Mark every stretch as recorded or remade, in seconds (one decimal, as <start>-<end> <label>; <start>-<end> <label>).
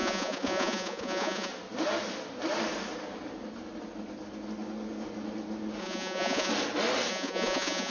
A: 0.0-1.5 remade; 1.5-5.8 recorded; 5.8-6.5 remade; 6.5-7.1 recorded; 7.1-7.9 remade